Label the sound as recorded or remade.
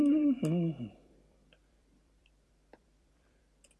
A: remade